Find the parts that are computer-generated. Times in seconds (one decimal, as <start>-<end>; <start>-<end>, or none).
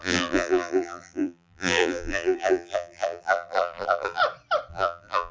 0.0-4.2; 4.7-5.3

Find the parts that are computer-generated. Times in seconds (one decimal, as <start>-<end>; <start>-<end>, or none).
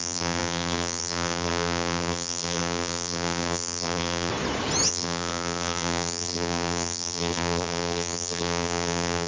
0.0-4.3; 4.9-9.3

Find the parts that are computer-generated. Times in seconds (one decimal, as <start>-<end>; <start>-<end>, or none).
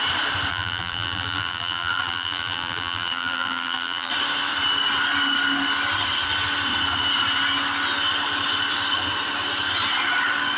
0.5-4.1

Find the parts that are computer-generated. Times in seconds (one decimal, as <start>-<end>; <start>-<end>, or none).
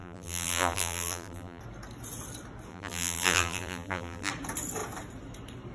0.0-1.6; 2.7-4.3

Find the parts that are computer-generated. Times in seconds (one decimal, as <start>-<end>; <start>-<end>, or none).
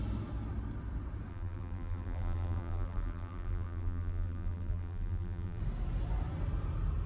1.3-5.6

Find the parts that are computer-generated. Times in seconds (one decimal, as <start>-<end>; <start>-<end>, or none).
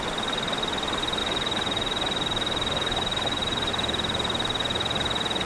1.2-3.7